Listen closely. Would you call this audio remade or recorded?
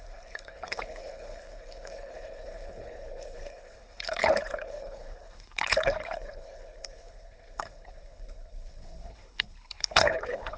remade